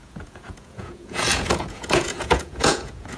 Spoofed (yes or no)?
yes